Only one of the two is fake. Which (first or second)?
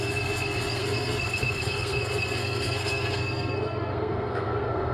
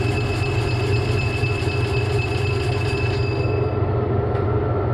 first